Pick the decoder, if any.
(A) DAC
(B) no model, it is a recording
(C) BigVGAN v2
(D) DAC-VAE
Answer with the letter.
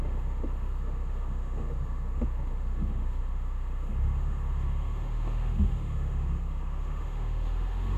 D